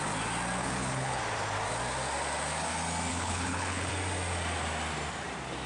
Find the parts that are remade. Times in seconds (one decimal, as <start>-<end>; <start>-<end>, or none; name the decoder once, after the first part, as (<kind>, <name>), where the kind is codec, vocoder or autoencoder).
0.6-1.2 (codec, HILCodec); 3.1-3.9